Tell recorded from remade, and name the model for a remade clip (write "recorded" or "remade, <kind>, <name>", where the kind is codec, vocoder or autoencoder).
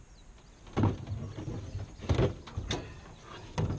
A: recorded